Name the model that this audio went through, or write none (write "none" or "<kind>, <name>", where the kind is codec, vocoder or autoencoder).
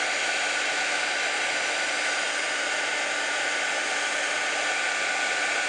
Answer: none